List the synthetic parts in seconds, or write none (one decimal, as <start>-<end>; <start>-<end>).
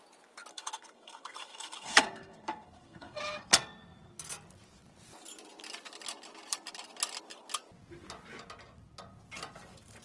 0.5-3.2